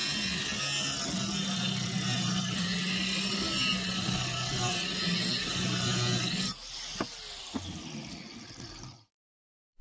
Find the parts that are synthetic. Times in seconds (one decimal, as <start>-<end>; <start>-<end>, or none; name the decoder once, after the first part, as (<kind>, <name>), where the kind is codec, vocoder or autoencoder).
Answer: 2.2-2.8 (vocoder, BigVGAN v2); 3.3-9.8

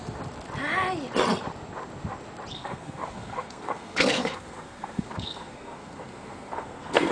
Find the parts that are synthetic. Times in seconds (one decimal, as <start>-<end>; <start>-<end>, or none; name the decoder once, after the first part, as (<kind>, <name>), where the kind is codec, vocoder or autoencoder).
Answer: 2.5-7.1 (codec, SNAC)

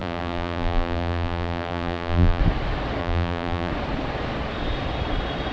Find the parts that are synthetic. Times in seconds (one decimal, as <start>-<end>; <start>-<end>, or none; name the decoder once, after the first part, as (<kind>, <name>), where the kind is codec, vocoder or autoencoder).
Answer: 0.0-2.4 (vocoder, BigVGAN v2); 3.0-3.7